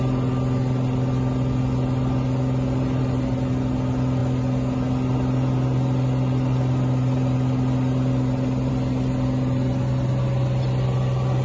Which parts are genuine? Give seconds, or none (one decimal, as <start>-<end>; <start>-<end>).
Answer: 0.0-11.4